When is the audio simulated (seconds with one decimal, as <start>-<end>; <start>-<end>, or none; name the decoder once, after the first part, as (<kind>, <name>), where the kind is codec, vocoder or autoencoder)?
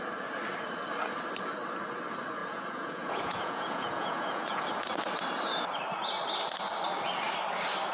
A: 2.4-4.6 (vocoder, Vocos)